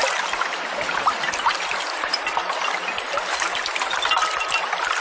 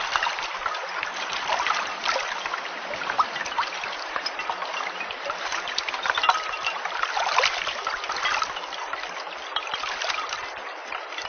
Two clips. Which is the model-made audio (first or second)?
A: second